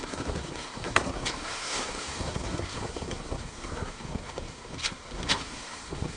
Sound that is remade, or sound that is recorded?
remade